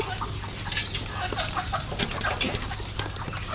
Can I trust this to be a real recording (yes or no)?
yes